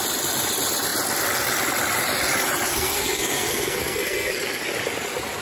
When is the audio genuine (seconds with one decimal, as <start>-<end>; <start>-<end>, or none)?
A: 0.0-2.7; 4.6-5.4